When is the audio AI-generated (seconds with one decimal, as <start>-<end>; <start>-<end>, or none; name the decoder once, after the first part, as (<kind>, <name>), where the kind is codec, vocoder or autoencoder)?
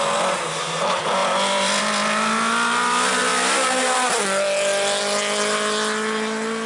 1.2-1.8 (vocoder, BigVGAN v2)